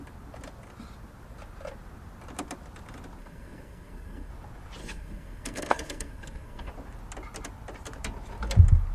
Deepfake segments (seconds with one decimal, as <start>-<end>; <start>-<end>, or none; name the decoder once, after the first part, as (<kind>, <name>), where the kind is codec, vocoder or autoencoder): 3.2-4.3 (codec, SNAC); 4.8-6.7